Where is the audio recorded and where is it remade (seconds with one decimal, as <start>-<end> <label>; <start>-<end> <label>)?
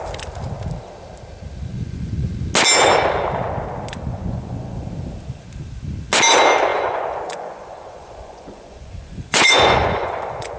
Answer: 0.0-1.7 recorded; 1.7-2.3 remade; 2.3-4.1 recorded; 4.1-4.9 remade; 4.9-6.7 recorded; 6.7-10.6 remade